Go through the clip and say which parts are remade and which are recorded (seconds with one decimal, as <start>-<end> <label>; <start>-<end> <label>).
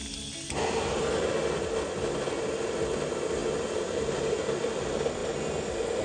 0.0-3.4 recorded; 3.4-4.8 remade; 4.8-5.2 recorded; 5.2-6.0 remade